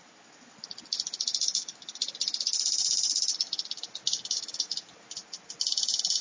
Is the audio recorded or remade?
recorded